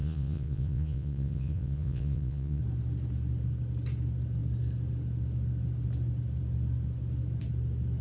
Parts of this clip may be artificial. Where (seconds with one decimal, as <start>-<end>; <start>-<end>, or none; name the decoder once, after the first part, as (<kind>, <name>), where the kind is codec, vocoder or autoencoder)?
0.0-2.6 (vocoder, Vocos)